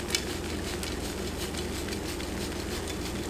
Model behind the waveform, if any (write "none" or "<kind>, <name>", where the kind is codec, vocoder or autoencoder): none